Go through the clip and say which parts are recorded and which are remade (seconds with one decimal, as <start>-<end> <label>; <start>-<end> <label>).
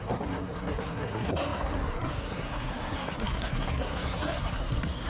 0.0-5.1 remade